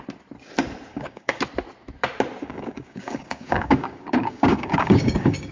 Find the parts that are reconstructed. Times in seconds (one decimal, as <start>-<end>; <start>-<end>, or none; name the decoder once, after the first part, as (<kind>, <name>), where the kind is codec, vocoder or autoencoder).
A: 0.9-1.4 (codec, DAC); 2.4-5.5